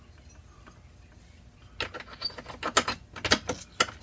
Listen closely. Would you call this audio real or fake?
real